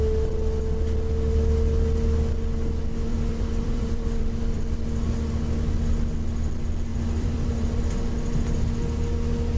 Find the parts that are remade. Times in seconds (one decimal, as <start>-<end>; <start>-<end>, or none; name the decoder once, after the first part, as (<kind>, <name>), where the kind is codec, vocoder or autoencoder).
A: 3.1-4.4 (vocoder, BigVGAN v2); 6.9-7.8

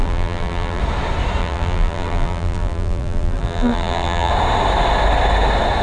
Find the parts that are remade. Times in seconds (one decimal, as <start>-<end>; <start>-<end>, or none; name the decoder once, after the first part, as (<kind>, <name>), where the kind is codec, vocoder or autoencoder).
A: 0.0-0.8 (vocoder, BigVGAN v2); 1.4-4.3

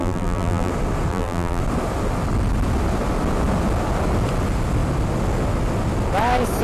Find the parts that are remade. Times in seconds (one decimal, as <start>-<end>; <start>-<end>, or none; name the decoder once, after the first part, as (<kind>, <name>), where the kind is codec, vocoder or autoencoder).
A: 0.0-0.7 (vocoder, BigVGAN v2); 1.1-1.6